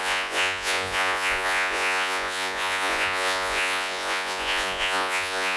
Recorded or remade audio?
remade